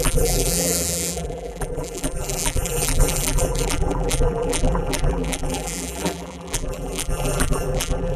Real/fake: fake